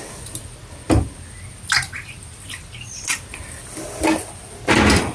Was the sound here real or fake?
real